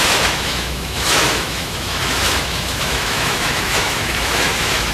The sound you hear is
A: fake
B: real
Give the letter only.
A